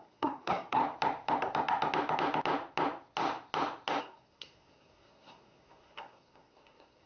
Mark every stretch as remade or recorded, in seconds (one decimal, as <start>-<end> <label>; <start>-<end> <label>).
0.0-0.8 remade; 0.8-4.0 recorded; 4.0-7.1 remade